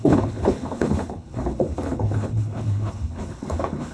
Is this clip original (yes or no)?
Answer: no